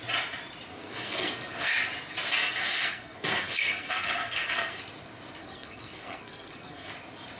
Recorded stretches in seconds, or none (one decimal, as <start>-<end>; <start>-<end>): 0.0-0.7; 1.7-2.4; 4.8-5.4; 6.9-7.4